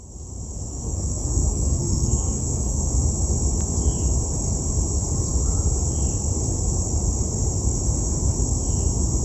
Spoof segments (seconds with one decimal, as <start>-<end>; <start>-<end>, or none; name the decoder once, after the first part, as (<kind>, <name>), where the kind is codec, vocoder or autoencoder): 0.7-2.9 (codec, SNAC)